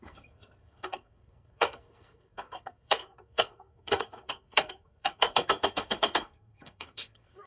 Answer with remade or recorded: remade